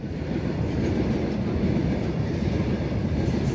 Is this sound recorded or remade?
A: recorded